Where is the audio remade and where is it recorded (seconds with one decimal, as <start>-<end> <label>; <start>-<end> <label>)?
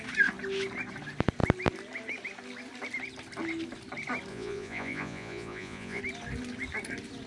0.0-4.3 recorded; 4.3-6.0 remade; 6.0-7.3 recorded